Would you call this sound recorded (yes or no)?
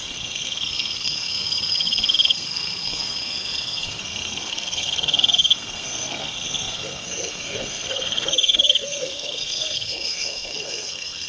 no